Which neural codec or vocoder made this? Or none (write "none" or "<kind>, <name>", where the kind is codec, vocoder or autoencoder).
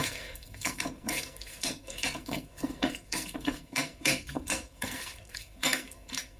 codec, SNAC